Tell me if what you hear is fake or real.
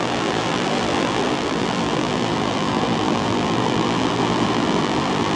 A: fake